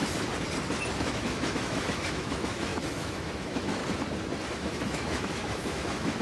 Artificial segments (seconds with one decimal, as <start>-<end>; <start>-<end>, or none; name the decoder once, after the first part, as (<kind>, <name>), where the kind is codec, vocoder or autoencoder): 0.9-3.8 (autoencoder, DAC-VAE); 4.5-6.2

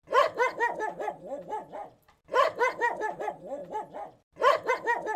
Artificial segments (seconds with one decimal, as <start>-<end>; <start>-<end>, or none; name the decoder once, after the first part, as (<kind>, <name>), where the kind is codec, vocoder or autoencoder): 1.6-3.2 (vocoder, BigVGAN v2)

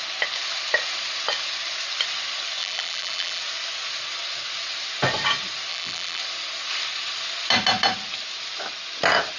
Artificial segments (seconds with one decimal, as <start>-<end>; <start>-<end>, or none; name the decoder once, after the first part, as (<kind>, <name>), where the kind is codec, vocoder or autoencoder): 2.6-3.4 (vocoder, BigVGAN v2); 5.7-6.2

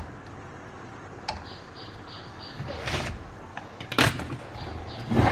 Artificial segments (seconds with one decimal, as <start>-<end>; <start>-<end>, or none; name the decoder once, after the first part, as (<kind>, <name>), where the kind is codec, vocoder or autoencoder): 2.3-3.1 (codec, DAC); 3.5-4.1

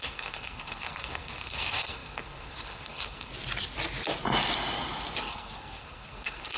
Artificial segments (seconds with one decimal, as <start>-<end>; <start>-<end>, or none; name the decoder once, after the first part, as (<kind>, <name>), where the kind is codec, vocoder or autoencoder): 0.0-3.3 (codec, SNAC); 5.2-6.6